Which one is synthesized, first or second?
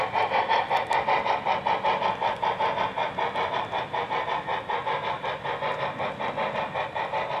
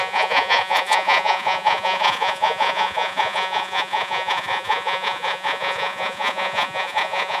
second